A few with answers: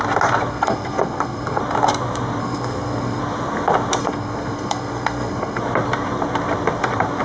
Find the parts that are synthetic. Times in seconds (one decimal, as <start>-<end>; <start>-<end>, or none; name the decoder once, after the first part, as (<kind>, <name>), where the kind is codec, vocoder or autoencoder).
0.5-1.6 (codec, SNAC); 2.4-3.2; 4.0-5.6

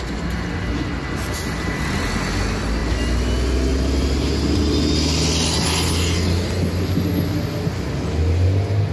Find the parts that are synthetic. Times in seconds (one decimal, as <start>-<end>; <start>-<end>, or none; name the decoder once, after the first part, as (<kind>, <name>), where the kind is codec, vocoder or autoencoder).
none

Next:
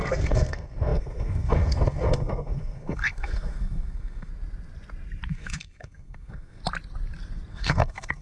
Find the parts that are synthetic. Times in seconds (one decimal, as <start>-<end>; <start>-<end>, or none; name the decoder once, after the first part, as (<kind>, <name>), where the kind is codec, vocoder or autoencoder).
0.0-4.3 (codec, SNAC); 5.3-6.6; 7.5-8.2

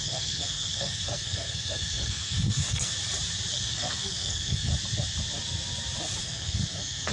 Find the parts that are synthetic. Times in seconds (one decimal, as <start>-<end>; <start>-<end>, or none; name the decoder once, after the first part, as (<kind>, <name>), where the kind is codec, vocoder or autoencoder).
0.0-2.9 (codec, SNAC); 3.5-4.7; 6.2-7.1

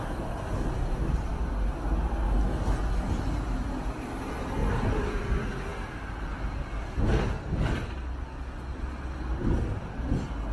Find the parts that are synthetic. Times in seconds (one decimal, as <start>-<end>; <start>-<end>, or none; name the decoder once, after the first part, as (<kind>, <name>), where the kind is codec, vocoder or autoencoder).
none

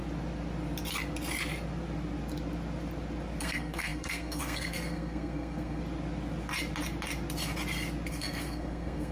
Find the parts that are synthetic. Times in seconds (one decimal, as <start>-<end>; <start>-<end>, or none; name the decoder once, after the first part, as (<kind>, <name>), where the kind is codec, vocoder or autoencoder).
3.4-5.8 (codec, SNAC); 8.1-9.1